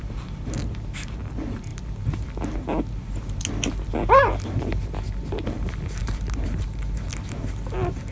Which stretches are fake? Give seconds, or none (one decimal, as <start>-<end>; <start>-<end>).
6.0-7.1